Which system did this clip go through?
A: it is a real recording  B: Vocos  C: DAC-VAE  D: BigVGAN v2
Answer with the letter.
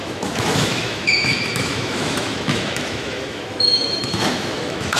C